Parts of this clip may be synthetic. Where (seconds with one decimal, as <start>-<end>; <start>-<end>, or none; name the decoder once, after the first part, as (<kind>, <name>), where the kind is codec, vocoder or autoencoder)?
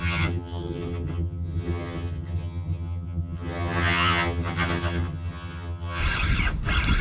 0.0-6.0 (vocoder, HiFi-GAN)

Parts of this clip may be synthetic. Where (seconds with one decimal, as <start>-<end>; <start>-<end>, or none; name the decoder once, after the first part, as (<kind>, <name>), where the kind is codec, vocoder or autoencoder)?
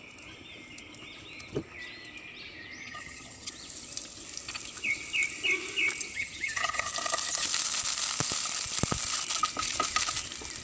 2.8-3.5 (vocoder, HiFi-GAN); 6.1-6.9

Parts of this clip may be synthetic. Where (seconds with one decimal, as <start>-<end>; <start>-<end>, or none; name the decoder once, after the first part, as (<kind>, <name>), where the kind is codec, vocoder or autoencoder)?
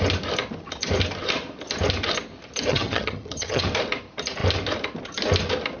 2.7-3.6 (vocoder, HiFi-GAN)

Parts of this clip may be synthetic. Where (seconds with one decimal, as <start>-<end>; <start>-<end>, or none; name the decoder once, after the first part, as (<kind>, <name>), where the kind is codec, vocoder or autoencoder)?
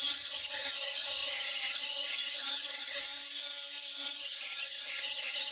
0.0-3.0 (vocoder, HiFi-GAN); 4.2-5.5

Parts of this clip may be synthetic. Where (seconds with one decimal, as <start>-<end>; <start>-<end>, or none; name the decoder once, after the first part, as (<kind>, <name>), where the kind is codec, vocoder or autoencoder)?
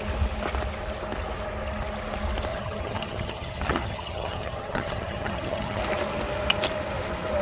2.5-5.8 (vocoder, HiFi-GAN)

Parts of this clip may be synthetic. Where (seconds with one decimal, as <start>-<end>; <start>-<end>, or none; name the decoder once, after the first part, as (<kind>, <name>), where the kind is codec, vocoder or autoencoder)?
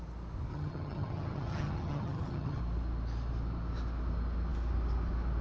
0.5-2.6 (vocoder, HiFi-GAN)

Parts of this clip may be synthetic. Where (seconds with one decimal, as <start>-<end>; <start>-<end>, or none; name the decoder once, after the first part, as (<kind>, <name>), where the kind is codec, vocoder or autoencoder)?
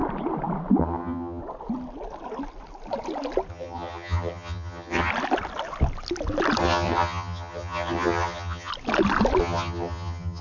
0.8-1.4 (vocoder, HiFi-GAN); 3.5-5.1; 6.6-8.7; 9.4-10.4